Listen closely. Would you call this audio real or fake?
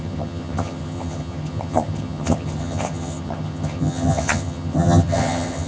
fake